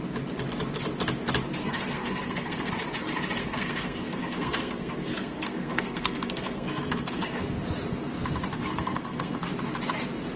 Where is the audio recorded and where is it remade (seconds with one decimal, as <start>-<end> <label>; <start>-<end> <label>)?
0.0-1.6 recorded; 1.6-2.7 remade; 2.7-3.4 recorded; 3.4-7.4 remade; 7.4-8.5 recorded; 8.5-9.5 remade; 9.5-10.4 recorded